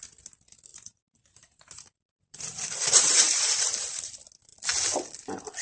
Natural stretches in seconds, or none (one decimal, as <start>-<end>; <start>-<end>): 0.0-0.7; 4.1-5.6